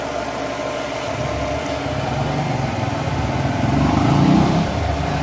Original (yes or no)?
no